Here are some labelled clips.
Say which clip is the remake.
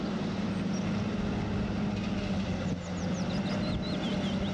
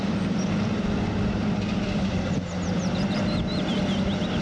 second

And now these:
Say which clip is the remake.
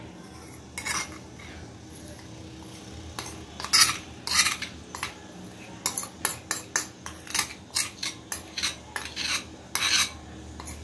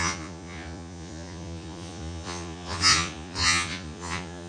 second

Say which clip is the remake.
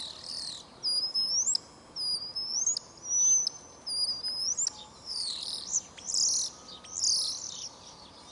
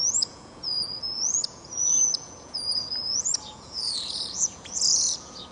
second